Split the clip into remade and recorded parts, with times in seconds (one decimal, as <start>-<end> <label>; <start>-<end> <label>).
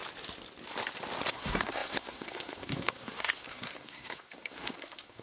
0.0-1.3 recorded; 1.3-5.2 remade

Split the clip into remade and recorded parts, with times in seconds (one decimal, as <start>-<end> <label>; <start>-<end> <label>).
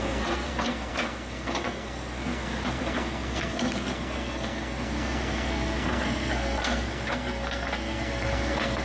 0.0-8.8 remade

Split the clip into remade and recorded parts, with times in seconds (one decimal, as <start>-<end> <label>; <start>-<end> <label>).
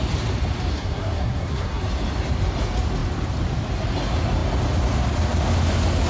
0.0-0.7 recorded; 0.7-1.8 remade; 1.8-6.1 recorded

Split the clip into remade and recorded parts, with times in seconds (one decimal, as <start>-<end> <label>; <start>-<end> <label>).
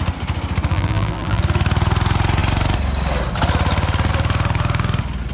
0.0-0.7 recorded; 0.7-1.4 remade; 1.4-5.3 recorded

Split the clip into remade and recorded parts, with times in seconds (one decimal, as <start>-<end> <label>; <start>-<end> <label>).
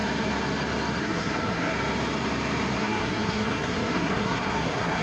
0.0-1.0 recorded; 1.0-1.7 remade; 1.7-2.8 recorded; 2.8-5.0 remade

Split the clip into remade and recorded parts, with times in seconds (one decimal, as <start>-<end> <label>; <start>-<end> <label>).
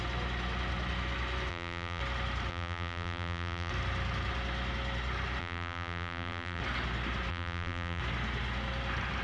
0.0-1.5 recorded; 1.5-2.0 remade; 2.0-2.5 recorded; 2.5-3.7 remade; 3.7-5.4 recorded; 5.4-6.6 remade; 6.6-7.3 recorded; 7.3-8.0 remade; 8.0-9.2 recorded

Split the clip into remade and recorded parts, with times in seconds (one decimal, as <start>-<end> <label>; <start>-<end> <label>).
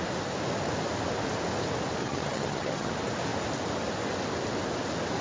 0.0-2.0 recorded; 2.0-2.9 remade; 2.9-5.2 recorded